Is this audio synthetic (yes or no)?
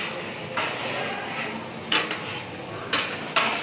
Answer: no